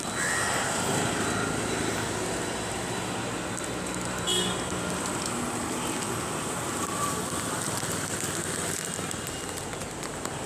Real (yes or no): yes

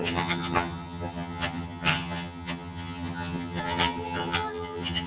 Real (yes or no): no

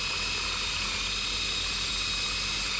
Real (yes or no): yes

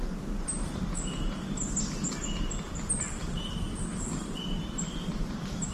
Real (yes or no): yes